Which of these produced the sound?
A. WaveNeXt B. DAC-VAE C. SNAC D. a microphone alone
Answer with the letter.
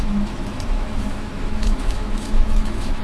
B